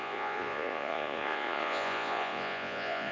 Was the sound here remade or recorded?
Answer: remade